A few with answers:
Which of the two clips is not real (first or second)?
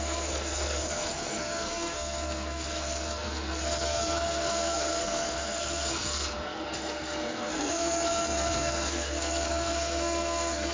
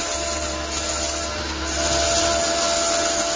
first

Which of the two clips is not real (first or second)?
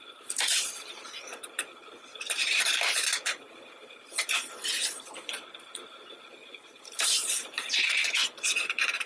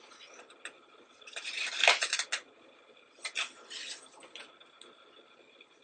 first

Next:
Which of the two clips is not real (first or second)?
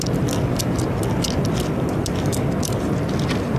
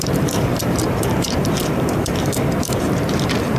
second